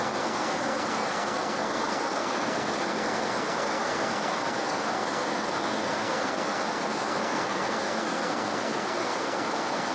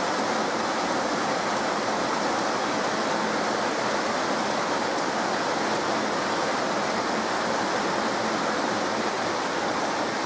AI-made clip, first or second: first